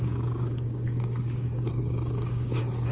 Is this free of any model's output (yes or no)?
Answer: no